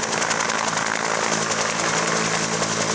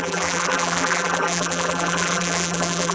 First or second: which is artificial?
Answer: second